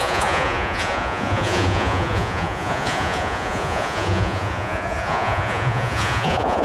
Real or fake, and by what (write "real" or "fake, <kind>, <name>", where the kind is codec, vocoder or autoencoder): fake, vocoder, Vocos